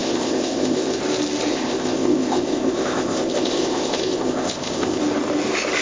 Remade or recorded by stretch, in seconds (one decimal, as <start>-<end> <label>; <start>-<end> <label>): 0.0-1.0 remade; 1.0-1.5 recorded; 1.5-5.0 remade; 5.0-5.8 recorded